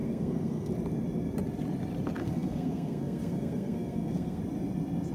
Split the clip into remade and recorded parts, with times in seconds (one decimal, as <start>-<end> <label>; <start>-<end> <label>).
0.0-0.7 remade; 0.7-2.2 recorded; 2.2-4.4 remade; 4.4-5.1 recorded